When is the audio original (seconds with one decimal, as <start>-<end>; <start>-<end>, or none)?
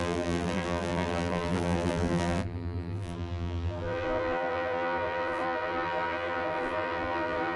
none